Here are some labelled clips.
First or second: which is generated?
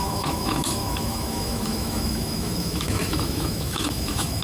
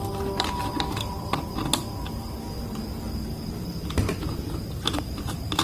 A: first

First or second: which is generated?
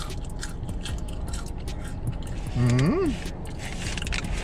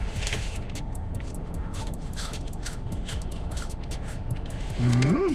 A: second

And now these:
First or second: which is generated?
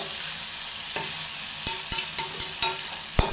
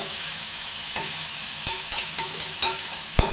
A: second